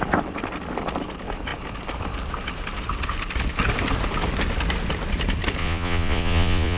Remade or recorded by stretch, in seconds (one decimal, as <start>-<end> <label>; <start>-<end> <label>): 0.0-5.6 recorded; 5.6-6.8 remade